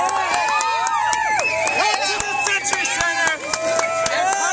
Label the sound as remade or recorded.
recorded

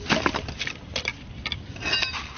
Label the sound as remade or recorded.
recorded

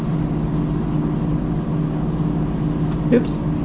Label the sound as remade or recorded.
recorded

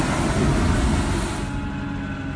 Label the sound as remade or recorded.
recorded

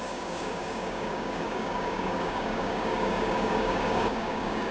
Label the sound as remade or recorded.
remade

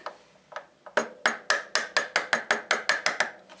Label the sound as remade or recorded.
recorded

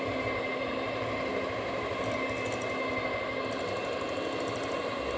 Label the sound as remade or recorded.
recorded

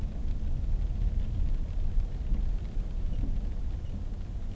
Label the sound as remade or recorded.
recorded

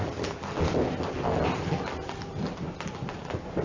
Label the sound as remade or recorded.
recorded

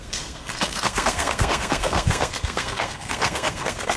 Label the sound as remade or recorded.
remade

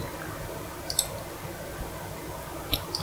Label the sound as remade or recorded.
recorded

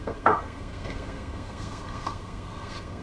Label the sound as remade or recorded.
remade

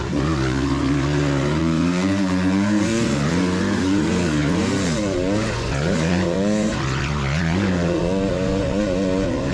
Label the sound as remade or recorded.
remade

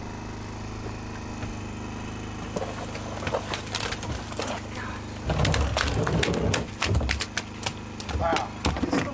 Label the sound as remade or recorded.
recorded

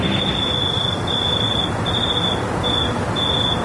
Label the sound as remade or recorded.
recorded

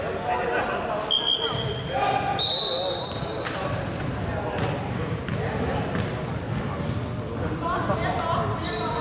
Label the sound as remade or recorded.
recorded